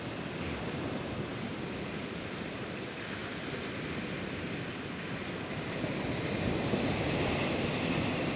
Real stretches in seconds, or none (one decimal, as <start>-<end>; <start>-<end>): 0.0-8.4